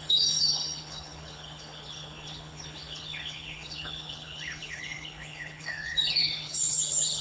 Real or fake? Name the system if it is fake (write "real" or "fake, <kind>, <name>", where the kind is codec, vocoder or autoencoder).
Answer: fake, codec, HILCodec